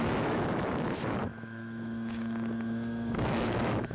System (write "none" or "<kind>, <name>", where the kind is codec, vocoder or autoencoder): autoencoder, DAC-VAE